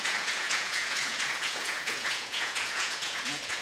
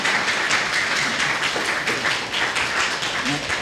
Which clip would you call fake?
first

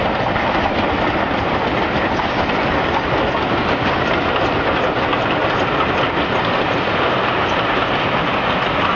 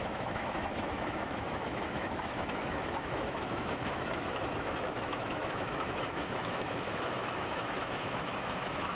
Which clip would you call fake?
second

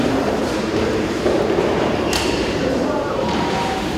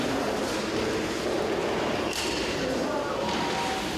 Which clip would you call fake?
first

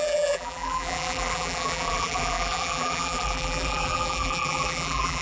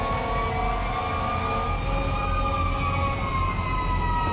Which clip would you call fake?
first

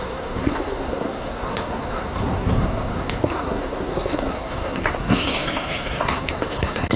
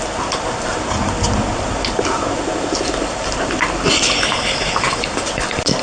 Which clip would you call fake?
first